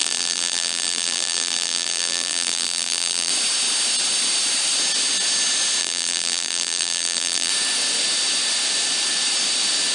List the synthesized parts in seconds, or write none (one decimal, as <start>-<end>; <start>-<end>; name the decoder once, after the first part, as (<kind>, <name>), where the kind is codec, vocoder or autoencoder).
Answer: 0.0-3.3 (vocoder, BigVGAN v2); 5.8-7.5